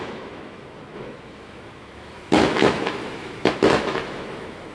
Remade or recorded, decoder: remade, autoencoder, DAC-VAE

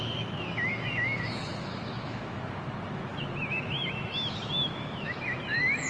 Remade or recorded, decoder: remade, autoencoder, DAC-VAE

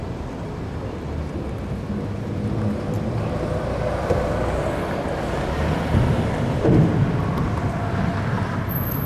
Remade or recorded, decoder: recorded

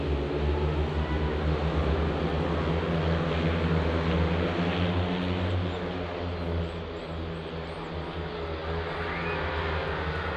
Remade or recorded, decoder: recorded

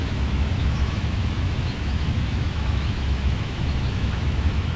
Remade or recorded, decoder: remade, autoencoder, DAC-VAE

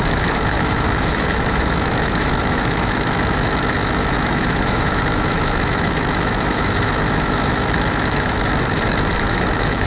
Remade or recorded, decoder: remade, autoencoder, DAC-VAE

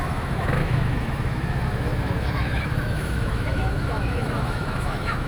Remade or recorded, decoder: remade, autoencoder, DAC-VAE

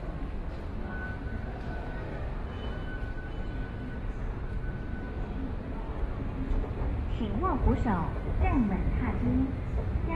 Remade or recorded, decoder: recorded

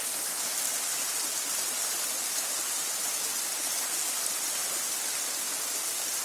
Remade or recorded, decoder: recorded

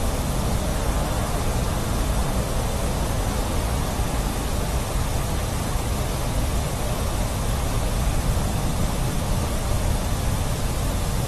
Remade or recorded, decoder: recorded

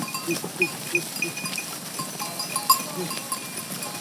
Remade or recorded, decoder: recorded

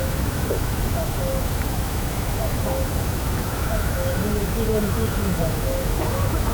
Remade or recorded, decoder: remade, autoencoder, DAC-VAE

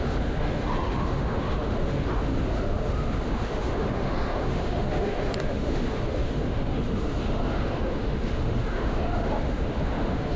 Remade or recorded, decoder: remade, autoencoder, DAC-VAE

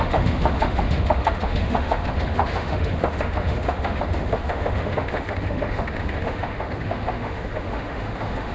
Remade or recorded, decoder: remade, autoencoder, DAC-VAE